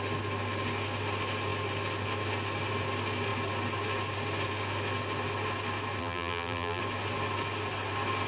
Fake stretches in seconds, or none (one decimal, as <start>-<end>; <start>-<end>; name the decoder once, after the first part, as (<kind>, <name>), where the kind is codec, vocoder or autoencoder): 6.0-6.8 (vocoder, BigVGAN v2)